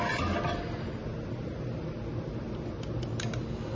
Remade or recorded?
recorded